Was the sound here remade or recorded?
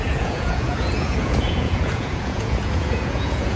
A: remade